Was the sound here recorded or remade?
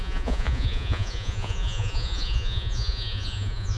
remade